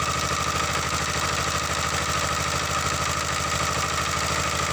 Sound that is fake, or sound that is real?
real